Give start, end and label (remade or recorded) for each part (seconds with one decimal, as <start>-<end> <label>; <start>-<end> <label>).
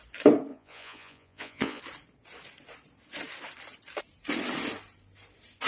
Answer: 0.0-0.5 recorded; 0.5-1.8 remade; 1.8-5.7 recorded